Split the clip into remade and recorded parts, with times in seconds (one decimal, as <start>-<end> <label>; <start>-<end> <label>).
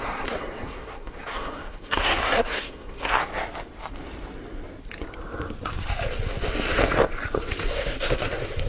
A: 0.0-3.3 remade; 3.3-7.7 recorded; 7.7-8.7 remade